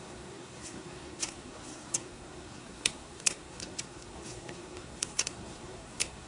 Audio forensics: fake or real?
fake